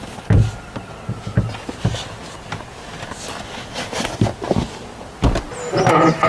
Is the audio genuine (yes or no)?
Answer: yes